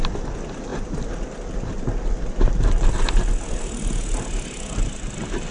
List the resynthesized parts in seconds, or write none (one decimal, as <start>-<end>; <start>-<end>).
none

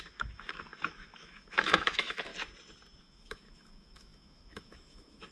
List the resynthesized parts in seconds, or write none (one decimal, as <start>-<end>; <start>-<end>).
0.0-2.3; 3.0-5.3

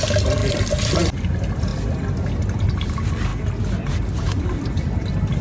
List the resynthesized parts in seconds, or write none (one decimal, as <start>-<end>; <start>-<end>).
0.0-1.7; 2.7-3.3; 3.9-5.4

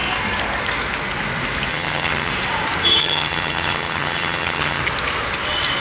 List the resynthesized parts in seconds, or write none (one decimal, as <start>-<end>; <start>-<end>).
1.7-2.3; 3.0-4.8

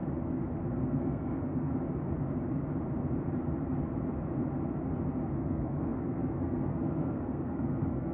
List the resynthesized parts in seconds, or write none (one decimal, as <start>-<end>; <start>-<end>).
0.6-1.7; 5.3-8.1